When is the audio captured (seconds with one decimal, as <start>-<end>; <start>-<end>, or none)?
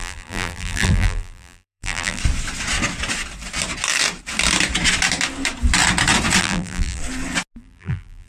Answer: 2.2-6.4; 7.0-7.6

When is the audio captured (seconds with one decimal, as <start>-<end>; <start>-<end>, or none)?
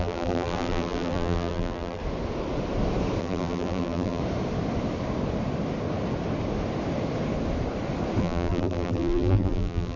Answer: 2.0-3.2; 4.2-8.2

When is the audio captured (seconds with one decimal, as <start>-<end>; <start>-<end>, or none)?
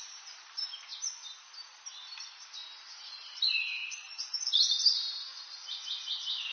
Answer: 2.6-3.4; 3.8-6.5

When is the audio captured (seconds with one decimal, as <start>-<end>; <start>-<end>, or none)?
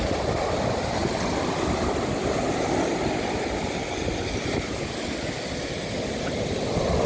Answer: 1.0-2.9